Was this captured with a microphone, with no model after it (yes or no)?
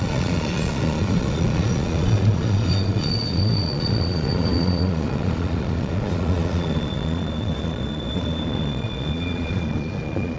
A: no